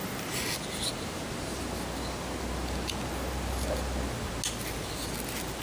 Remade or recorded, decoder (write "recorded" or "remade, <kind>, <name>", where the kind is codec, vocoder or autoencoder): recorded